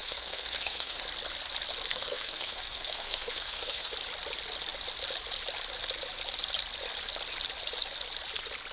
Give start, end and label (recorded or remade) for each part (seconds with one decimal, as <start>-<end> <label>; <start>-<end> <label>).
0.0-1.0 remade; 1.0-1.9 recorded; 1.9-3.9 remade; 3.9-8.7 recorded